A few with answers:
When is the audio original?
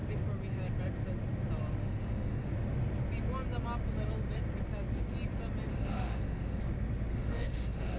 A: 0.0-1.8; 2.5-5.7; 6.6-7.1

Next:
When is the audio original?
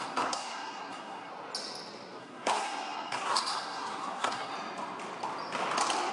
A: 1.3-2.2; 4.5-6.1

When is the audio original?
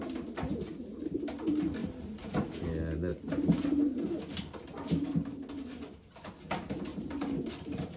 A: 0.0-1.8; 2.3-3.1; 4.2-6.9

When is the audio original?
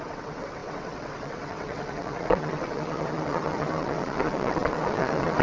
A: none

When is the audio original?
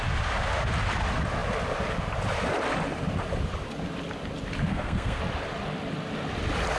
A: 0.0-4.7; 5.2-6.8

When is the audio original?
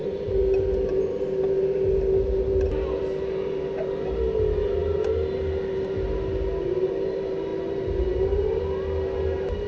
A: 0.0-9.7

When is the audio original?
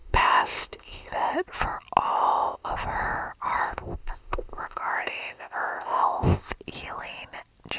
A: 1.1-2.1; 2.7-3.6; 6.5-7.8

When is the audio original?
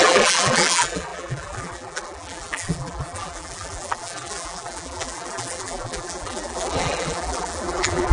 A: none